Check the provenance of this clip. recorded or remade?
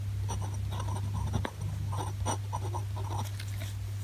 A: recorded